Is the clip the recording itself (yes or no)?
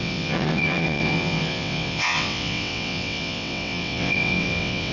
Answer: no